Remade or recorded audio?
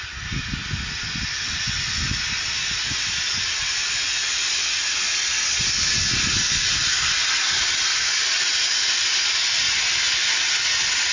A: recorded